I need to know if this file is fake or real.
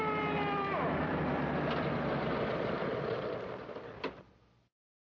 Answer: fake